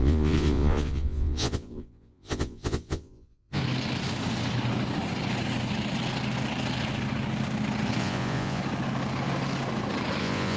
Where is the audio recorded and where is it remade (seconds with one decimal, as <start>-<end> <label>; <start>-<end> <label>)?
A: 0.0-3.6 remade; 3.6-8.0 recorded; 8.0-8.6 remade; 8.6-10.2 recorded; 10.2-10.6 remade